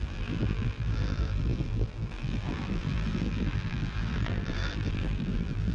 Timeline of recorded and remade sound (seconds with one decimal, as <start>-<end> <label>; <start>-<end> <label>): 0.0-5.7 remade